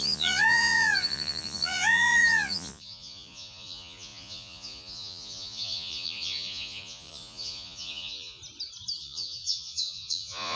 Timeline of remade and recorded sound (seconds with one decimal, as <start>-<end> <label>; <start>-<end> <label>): 0.0-8.4 remade; 8.4-9.0 recorded; 9.0-10.6 remade